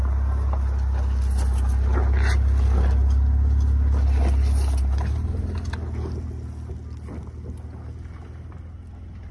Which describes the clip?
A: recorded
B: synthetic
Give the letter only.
A